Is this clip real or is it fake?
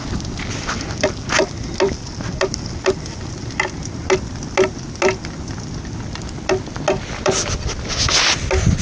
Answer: real